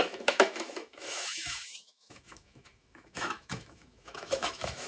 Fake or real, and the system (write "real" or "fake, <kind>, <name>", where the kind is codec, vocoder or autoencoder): fake, autoencoder, DAC-VAE